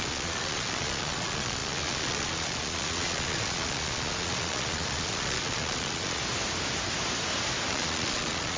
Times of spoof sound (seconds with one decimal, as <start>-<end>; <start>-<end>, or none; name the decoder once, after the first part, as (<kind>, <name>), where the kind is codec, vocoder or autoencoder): 0.0-6.2 (vocoder, Vocos); 7.7-8.6